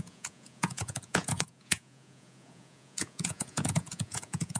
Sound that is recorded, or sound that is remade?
remade